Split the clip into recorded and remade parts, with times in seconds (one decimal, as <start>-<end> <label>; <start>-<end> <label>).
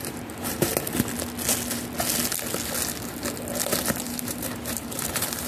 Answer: 0.0-0.7 remade; 0.7-4.0 recorded; 4.0-5.5 remade